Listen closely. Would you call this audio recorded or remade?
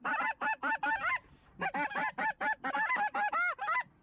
recorded